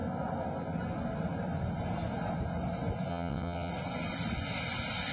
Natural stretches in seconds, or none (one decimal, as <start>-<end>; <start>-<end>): 0.0-3.1; 3.7-5.1